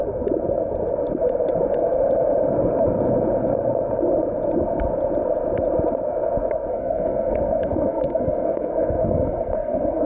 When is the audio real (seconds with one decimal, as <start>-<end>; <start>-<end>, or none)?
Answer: 0.0-6.7